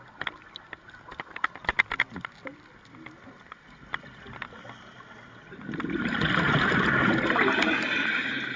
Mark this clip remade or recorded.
recorded